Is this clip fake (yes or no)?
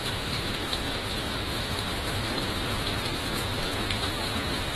yes